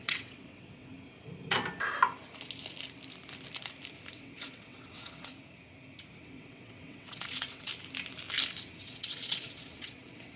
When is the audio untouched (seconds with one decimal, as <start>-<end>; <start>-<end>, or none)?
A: 0.9-4.1; 5.3-6.1; 7.7-8.8